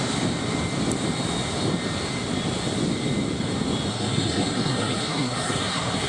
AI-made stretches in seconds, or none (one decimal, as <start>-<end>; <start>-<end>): 3.9-6.1